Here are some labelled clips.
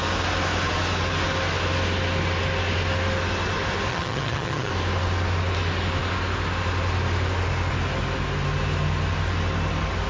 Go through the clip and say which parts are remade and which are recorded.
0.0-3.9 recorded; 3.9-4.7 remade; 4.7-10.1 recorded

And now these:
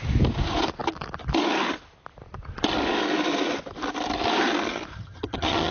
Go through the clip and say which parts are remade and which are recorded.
0.0-4.9 recorded; 4.9-5.7 remade

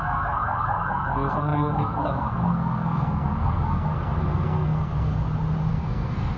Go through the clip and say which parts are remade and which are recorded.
0.0-5.1 remade; 5.1-5.7 recorded; 5.7-6.4 remade

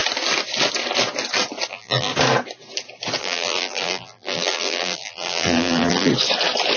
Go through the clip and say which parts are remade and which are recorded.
0.0-1.7 recorded; 1.7-2.1 remade; 2.1-3.2 recorded; 3.2-6.1 remade; 6.1-6.8 recorded

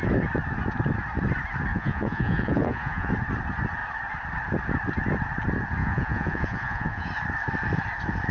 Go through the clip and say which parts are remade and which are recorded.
0.0-1.7 recorded; 1.7-3.1 remade; 3.1-5.8 recorded; 5.8-7.1 remade; 7.1-8.3 recorded

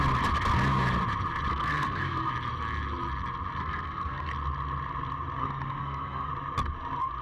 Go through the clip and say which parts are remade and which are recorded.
0.0-1.5 recorded; 1.5-2.3 remade; 2.3-3.6 recorded; 3.6-4.3 remade; 4.3-5.4 recorded; 5.4-6.3 remade; 6.3-7.2 recorded

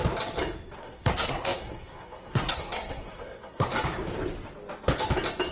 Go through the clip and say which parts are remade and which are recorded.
0.0-0.8 recorded; 0.8-3.7 remade; 3.7-5.5 recorded